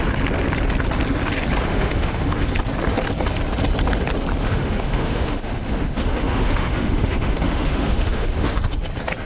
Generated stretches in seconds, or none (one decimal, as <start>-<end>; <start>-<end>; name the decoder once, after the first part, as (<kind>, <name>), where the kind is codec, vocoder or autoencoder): 1.7-2.5 (autoencoder, DAC-VAE); 4.4-8.6